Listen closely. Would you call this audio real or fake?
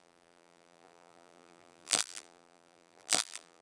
fake